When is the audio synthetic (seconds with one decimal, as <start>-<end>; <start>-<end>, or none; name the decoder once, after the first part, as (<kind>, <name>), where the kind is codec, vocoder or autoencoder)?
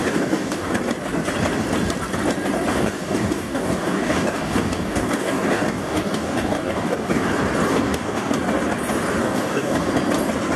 0.0-0.8 (codec, DAC); 2.7-7.3; 7.7-8.3; 9.2-9.9